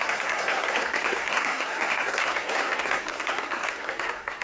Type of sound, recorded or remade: remade